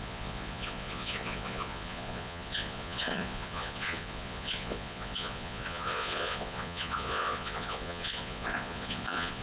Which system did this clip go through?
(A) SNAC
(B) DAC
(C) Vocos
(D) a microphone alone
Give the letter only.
C